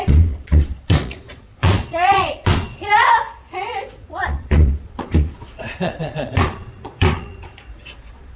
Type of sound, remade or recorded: remade